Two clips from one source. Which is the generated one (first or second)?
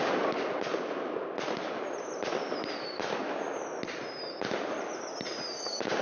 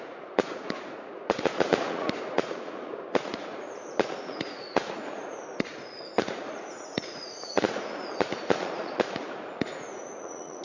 second